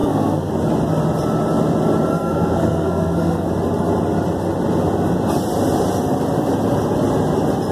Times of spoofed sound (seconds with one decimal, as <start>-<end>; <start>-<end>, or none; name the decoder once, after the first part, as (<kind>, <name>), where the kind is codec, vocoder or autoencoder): 0.0-0.5 (codec, SNAC); 2.1-3.5